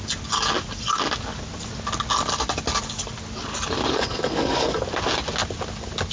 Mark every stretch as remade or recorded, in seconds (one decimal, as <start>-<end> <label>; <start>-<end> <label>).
0.0-3.9 recorded; 3.9-4.8 remade; 4.8-6.1 recorded